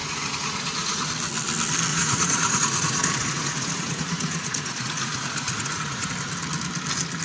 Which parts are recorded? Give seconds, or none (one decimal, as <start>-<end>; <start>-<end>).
1.1-1.9; 6.1-7.2